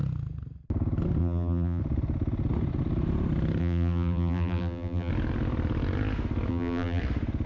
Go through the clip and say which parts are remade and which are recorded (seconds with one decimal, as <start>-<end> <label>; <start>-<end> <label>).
0.0-1.2 recorded; 1.2-1.8 remade; 1.8-3.6 recorded; 3.6-5.1 remade; 5.1-6.5 recorded; 6.5-7.0 remade; 7.0-7.5 recorded

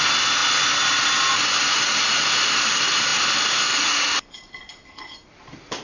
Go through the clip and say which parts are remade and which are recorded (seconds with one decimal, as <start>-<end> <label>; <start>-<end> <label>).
0.0-5.8 recorded

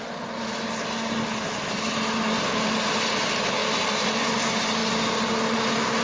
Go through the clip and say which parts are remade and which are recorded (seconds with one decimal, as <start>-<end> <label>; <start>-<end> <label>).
0.0-6.0 recorded

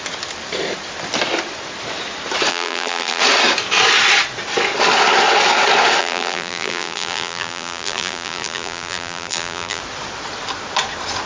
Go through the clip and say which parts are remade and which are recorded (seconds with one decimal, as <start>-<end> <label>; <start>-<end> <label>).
0.0-2.5 recorded; 2.5-3.2 remade; 3.2-6.0 recorded; 6.0-9.8 remade; 9.8-11.3 recorded

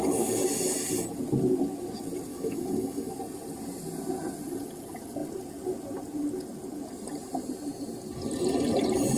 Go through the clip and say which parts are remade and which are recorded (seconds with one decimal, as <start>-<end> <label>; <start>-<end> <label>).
0.0-2.3 recorded; 2.3-3.1 remade; 3.1-9.2 recorded

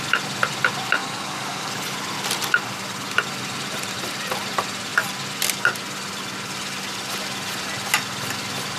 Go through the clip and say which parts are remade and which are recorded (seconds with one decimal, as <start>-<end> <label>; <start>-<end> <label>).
0.0-1.0 recorded; 1.0-1.7 remade; 1.7-8.8 recorded